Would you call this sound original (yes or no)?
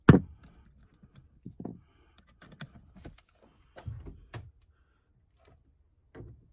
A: yes